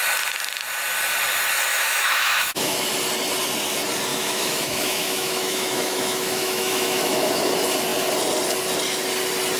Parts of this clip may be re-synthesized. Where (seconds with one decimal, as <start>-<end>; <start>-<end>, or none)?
1.7-2.9; 4.1-7.4